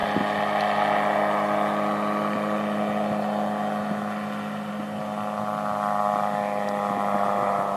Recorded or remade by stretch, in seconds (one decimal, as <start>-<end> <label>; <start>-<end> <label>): 0.0-7.8 recorded